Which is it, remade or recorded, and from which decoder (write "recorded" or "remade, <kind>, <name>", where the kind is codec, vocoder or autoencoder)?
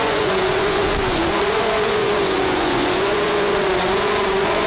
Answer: remade, vocoder, Vocos